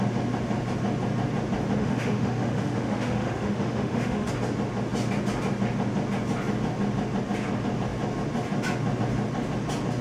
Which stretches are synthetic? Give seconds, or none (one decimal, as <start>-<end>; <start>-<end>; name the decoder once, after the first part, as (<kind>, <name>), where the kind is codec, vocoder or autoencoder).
1.8-4.3 (autoencoder, DAC-VAE)